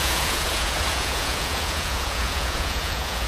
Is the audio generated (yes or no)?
yes